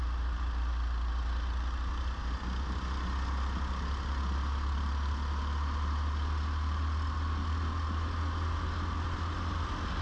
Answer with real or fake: real